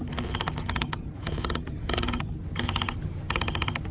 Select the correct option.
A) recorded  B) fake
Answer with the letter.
A